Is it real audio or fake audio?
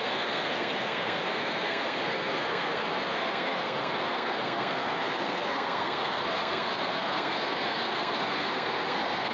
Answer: fake